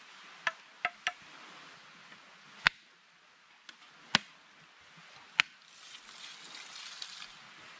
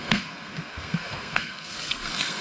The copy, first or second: second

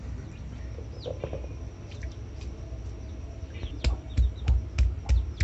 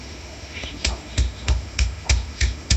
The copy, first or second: second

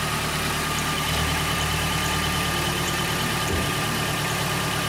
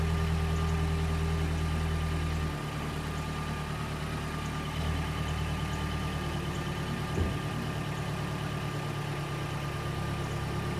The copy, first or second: first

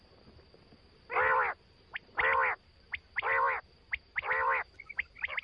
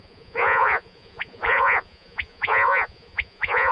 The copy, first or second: second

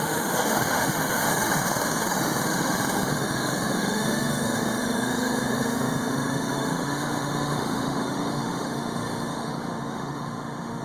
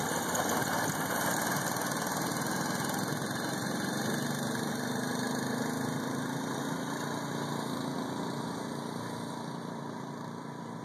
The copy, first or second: first